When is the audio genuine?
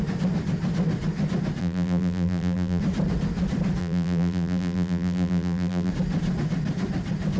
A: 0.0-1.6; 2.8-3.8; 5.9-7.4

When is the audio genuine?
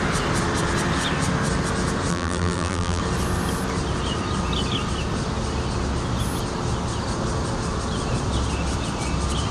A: 0.0-2.1; 3.0-9.5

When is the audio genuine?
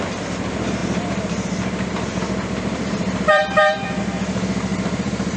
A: 0.0-0.8; 4.0-4.7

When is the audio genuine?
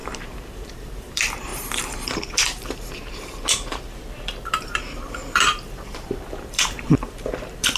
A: none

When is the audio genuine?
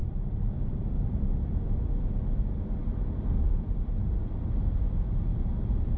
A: 2.4-6.0